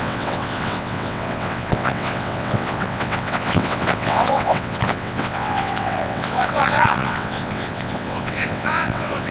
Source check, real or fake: fake